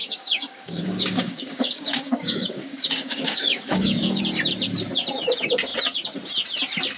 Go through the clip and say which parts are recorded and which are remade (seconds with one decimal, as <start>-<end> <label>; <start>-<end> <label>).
0.0-4.2 remade; 4.2-7.0 recorded